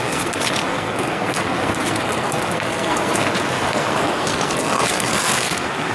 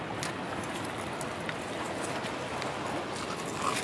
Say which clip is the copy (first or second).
first